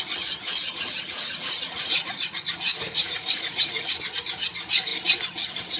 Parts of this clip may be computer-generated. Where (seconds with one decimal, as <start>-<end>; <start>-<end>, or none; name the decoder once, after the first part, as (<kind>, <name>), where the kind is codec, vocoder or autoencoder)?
0.4-3.9 (vocoder, Vocos)